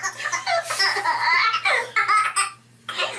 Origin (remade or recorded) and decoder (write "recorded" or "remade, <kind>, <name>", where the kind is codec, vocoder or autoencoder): recorded